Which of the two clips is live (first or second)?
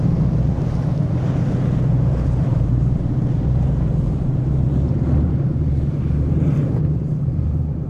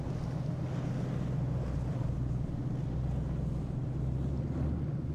second